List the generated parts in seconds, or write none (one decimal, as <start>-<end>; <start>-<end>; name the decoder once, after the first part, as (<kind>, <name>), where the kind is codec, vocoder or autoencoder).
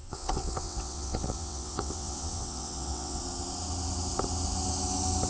0.0-3.2 (vocoder, WaveNeXt)